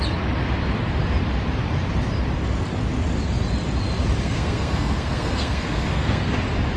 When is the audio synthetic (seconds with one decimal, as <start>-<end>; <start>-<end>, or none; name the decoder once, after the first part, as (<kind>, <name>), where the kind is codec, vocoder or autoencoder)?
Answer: 4.2-6.3 (codec, SNAC)